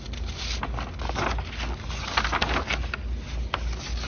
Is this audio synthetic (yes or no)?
no